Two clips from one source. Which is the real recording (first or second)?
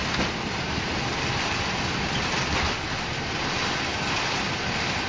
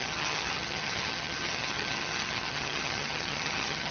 first